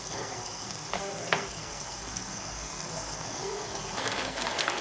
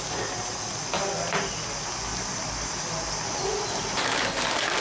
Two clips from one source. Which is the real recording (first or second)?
second